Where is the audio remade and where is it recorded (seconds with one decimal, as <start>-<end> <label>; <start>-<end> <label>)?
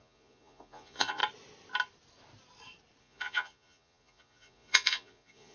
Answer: 0.0-1.2 remade; 1.2-3.0 recorded; 3.0-5.5 remade